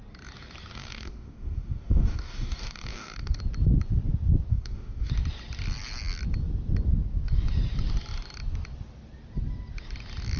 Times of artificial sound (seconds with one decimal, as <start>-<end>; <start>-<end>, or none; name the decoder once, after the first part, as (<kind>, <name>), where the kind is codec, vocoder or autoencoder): 0.7-3.4 (codec, DAC); 4.5-5.1